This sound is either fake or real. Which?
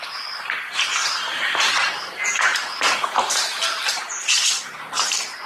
fake